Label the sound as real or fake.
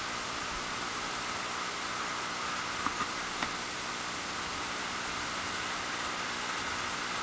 real